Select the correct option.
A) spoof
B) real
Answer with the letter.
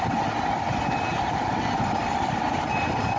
B